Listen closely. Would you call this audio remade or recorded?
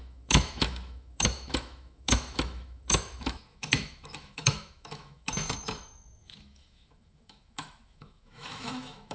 remade